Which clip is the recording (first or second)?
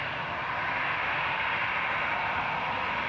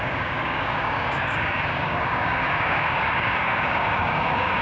first